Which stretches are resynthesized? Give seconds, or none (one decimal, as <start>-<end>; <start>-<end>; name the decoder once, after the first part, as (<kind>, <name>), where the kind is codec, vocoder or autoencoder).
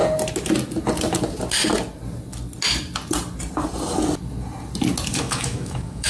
5.1-6.1 (autoencoder, DAC-VAE)